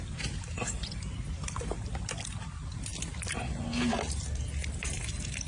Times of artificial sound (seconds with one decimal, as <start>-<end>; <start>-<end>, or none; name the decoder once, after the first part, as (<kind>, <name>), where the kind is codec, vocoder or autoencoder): 0.0-2.9 (vocoder, BigVGAN v2); 4.8-5.5